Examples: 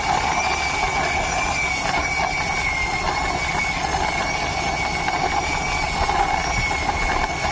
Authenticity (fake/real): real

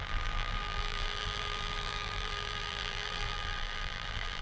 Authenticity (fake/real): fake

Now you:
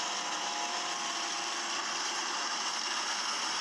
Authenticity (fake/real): real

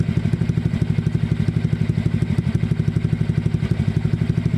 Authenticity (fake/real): real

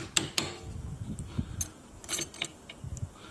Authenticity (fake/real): real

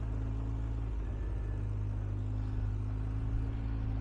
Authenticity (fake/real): real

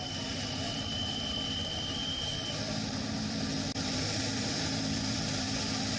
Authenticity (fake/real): fake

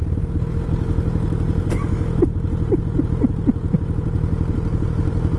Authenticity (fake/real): real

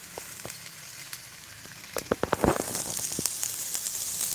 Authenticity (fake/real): fake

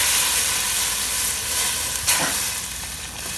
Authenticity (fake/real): real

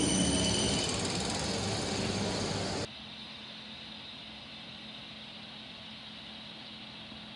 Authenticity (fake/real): real